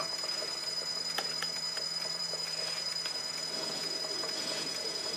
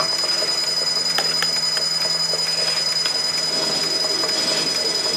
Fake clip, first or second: first